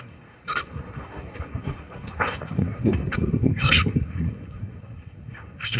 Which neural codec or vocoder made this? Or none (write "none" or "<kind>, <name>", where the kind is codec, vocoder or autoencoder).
codec, SNAC